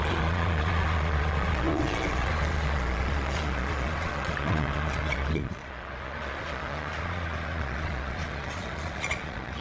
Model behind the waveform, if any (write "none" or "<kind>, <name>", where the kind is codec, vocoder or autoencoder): vocoder, Vocos